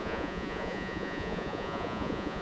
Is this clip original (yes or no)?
no